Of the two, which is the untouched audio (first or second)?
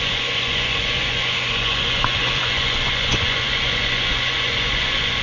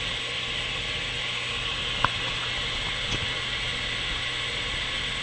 second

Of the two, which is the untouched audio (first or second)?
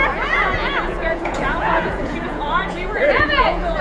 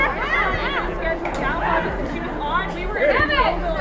second